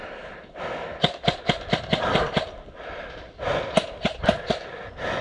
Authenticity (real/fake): real